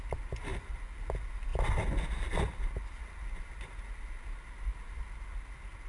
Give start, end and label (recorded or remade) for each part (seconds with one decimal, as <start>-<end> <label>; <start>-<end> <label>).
0.0-5.9 recorded

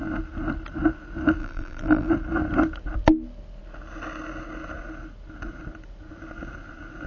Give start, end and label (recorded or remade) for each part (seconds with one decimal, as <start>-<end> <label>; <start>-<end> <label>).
0.0-1.4 recorded; 1.4-2.1 remade; 2.1-7.1 recorded

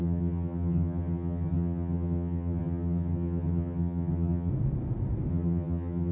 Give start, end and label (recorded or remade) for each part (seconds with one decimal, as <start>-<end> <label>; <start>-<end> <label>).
0.0-4.5 remade; 4.5-5.3 recorded; 5.3-6.1 remade

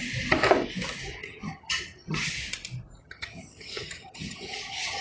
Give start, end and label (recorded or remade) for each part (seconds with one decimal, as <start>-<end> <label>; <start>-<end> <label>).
0.0-1.2 recorded; 1.2-2.3 remade; 2.3-3.0 recorded; 3.0-5.0 remade

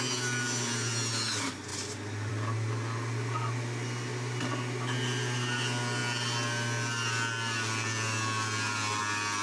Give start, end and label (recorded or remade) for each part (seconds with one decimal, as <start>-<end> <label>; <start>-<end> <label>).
0.0-9.4 recorded

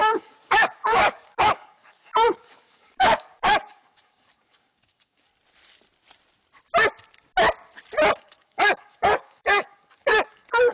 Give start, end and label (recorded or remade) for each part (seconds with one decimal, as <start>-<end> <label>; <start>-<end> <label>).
0.0-5.3 remade; 5.3-8.2 recorded; 8.2-10.7 remade

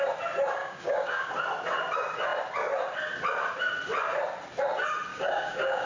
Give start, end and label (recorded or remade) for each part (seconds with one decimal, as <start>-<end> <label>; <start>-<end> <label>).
0.0-0.6 recorded; 0.6-1.3 remade; 1.3-5.1 recorded; 5.1-5.9 remade